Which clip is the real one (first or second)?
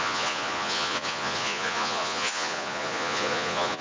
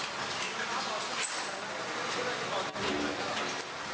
second